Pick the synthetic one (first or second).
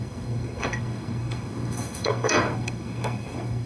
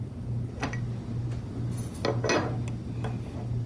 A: first